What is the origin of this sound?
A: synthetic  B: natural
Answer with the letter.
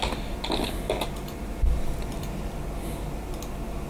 B